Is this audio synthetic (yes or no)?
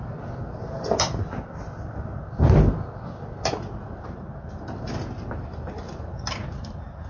yes